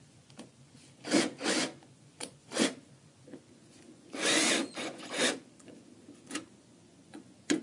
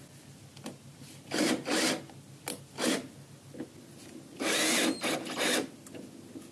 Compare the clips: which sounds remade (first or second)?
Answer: first